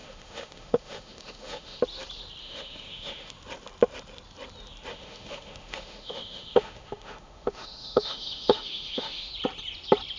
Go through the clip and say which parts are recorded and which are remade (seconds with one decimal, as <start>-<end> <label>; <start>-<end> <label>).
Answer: 0.0-1.8 remade; 1.8-2.4 recorded; 2.4-3.3 remade; 3.3-4.9 recorded; 4.9-9.3 remade; 9.3-10.2 recorded